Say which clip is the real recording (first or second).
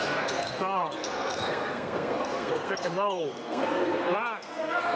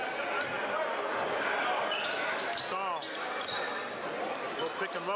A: second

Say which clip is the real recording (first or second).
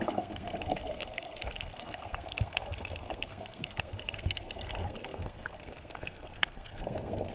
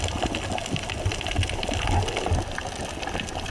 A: second